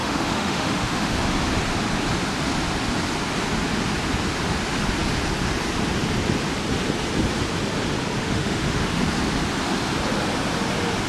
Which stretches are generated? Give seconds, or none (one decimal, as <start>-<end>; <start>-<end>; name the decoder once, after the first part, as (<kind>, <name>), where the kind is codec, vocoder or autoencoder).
0.0-1.2 (autoencoder, DAC-VAE); 8.2-9.0